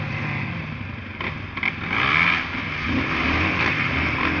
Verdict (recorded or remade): recorded